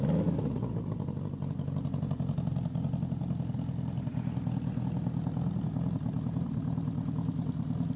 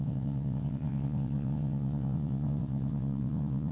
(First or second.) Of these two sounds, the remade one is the second